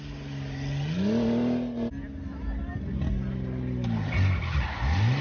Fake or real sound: real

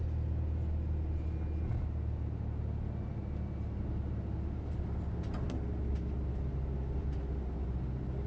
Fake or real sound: real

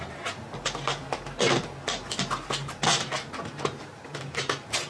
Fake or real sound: real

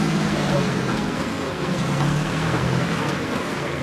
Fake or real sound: fake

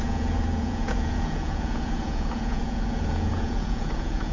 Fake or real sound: fake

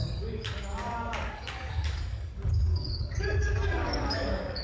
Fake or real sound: fake